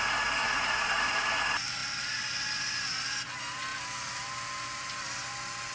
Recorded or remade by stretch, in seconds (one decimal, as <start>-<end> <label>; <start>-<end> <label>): 0.0-0.4 recorded; 0.4-1.0 remade; 1.0-5.7 recorded